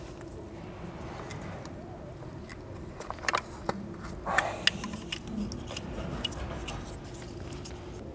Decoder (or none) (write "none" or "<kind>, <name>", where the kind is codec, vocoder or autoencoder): none